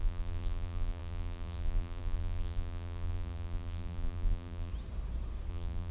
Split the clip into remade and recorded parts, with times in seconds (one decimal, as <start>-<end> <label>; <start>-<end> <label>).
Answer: 0.0-4.7 remade; 4.7-5.5 recorded; 5.5-5.9 remade